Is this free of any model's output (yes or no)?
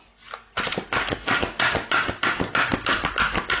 yes